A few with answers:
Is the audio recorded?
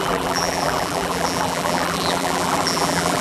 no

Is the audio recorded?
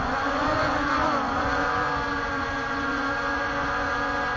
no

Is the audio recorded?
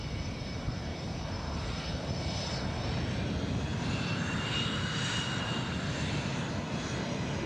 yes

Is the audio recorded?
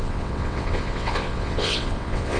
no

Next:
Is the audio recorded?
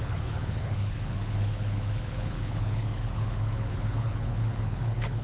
no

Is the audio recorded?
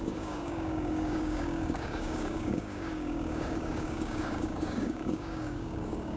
no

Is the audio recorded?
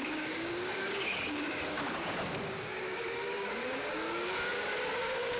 no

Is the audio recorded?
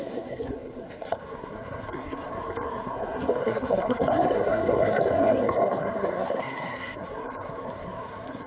no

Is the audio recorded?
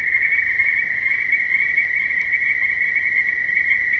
yes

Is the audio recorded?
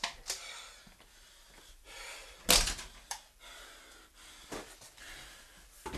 yes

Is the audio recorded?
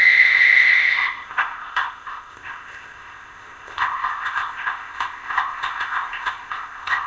no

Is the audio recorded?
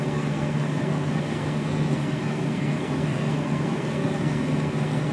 no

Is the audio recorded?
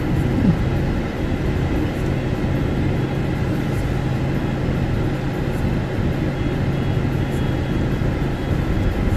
yes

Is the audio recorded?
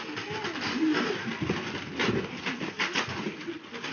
yes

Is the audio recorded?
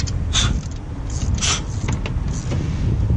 yes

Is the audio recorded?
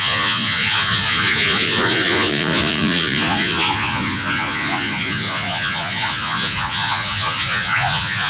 no